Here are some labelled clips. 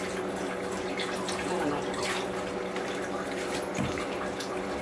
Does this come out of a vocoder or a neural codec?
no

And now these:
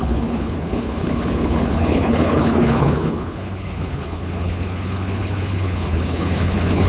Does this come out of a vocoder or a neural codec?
yes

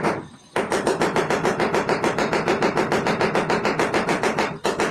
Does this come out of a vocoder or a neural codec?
no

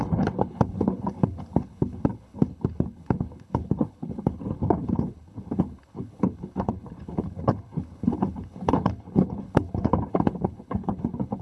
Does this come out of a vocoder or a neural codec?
yes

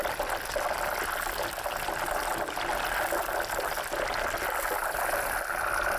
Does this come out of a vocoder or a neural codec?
no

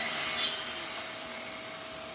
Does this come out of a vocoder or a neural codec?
no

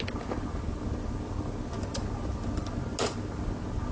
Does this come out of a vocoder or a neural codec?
no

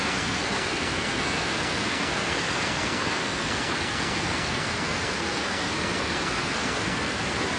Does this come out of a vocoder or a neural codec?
yes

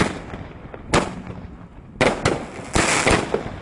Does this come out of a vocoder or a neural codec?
no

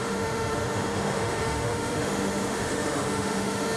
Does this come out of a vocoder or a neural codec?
yes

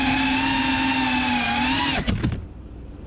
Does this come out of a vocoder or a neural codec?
no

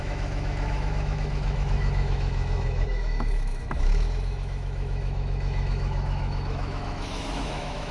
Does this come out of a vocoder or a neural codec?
yes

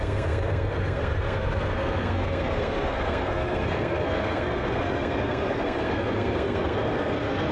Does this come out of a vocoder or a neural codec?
yes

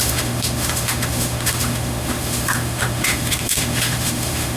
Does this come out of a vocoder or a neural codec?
yes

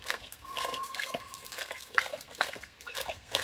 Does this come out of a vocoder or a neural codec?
yes